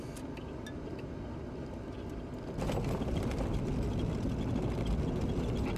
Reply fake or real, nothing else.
real